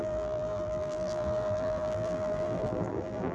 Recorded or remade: remade